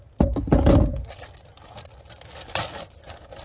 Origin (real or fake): real